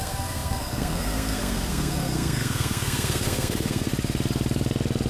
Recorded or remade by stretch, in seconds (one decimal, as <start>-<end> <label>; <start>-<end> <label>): 0.0-3.9 remade; 3.9-5.1 recorded